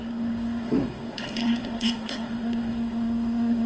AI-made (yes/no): yes